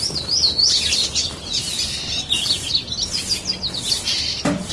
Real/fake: real